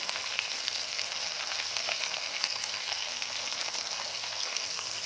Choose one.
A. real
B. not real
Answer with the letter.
B